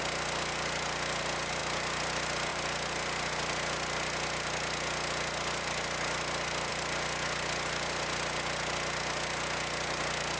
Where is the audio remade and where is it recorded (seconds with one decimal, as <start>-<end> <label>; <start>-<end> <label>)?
0.0-1.6 recorded; 1.6-2.1 remade; 2.1-10.4 recorded